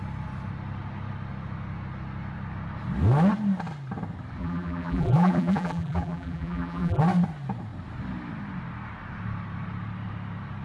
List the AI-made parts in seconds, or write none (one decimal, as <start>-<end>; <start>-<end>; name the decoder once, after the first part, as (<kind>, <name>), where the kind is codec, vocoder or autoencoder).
4.4-7.0 (vocoder, BigVGAN v2)